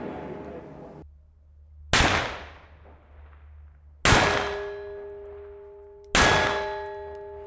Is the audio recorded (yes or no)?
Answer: yes